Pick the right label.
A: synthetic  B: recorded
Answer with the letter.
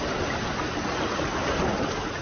B